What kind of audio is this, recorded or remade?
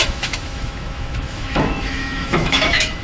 remade